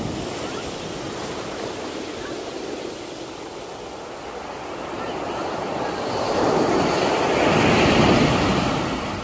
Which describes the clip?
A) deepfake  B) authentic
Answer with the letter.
B